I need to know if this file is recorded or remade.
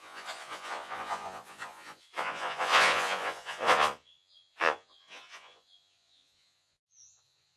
remade